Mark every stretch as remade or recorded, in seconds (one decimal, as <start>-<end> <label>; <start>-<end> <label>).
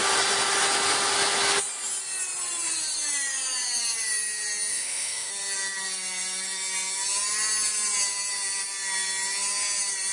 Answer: 0.0-4.7 recorded; 4.7-5.3 remade; 5.3-10.1 recorded